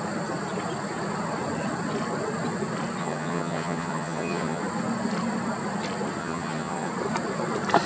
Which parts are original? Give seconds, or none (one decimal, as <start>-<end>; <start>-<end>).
0.0-3.0; 4.6-6.2; 6.9-7.9